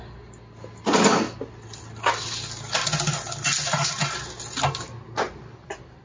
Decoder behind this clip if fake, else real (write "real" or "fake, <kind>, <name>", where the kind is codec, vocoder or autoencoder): real